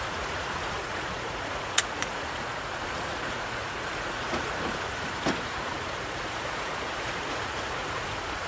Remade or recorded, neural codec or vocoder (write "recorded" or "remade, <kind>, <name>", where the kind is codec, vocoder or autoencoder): remade, vocoder, Vocos